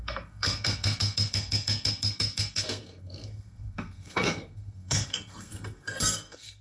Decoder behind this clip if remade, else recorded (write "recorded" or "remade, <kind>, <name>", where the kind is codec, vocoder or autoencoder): remade, codec, SNAC